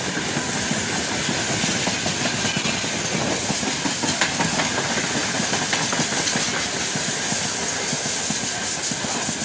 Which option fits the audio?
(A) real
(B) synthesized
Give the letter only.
A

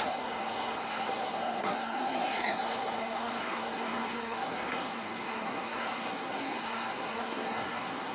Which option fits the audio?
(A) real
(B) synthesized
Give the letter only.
B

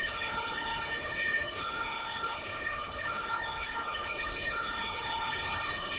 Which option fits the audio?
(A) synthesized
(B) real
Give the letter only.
A